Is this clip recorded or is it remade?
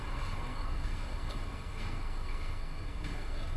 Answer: remade